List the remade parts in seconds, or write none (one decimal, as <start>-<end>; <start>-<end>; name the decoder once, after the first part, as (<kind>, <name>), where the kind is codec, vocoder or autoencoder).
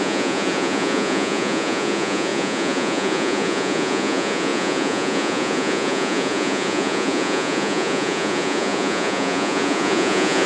0.0-10.5 (vocoder, Vocos)